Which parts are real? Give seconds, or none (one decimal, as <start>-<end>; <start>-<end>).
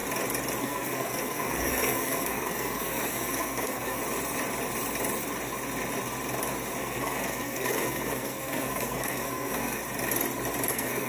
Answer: 0.0-0.6; 4.0-6.8; 9.8-10.7